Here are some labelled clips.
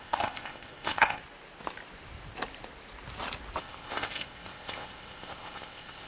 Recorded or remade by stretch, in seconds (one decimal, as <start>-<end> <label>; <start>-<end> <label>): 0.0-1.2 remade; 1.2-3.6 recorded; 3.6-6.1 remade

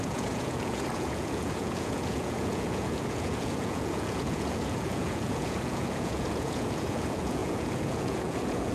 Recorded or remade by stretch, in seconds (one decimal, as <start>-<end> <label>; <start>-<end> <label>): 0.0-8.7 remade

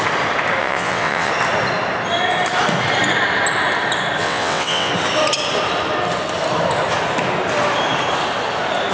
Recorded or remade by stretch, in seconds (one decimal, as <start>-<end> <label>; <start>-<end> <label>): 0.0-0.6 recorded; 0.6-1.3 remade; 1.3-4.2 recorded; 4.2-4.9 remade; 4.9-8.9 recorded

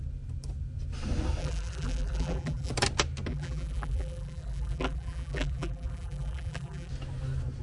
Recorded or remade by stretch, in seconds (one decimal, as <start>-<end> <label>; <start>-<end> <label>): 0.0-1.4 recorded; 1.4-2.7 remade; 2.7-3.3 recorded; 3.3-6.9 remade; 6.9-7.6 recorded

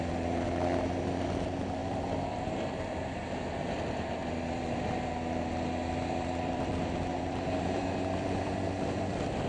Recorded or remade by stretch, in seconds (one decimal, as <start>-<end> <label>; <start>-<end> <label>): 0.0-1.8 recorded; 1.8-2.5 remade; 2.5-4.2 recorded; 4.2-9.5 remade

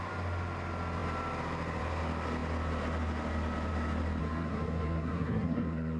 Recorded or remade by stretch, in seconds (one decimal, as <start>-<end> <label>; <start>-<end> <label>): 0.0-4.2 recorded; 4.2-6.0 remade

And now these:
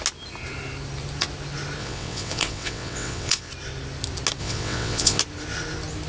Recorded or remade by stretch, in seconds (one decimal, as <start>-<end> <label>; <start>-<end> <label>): 0.0-1.8 recorded; 1.8-3.5 remade; 3.5-4.4 recorded; 4.4-5.2 remade; 5.2-6.1 recorded

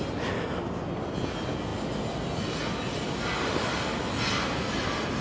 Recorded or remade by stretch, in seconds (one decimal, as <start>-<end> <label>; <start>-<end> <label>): 0.0-5.2 recorded